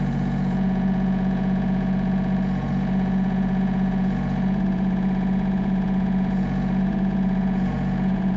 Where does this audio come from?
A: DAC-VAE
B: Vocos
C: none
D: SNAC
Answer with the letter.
B